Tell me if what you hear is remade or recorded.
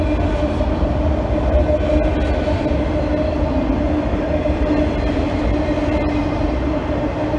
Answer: recorded